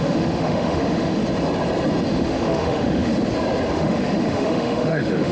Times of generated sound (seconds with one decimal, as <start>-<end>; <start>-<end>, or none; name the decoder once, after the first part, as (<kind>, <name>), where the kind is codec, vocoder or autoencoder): 0.0-1.2 (autoencoder, DAC-VAE); 2.1-3.1; 3.7-5.3